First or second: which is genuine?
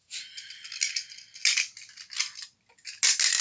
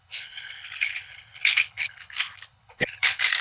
first